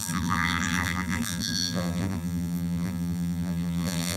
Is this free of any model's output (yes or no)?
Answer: no